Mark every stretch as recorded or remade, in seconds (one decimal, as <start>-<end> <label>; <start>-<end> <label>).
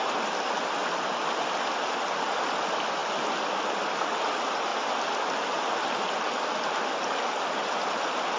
0.0-4.7 remade; 4.7-6.8 recorded; 6.8-8.4 remade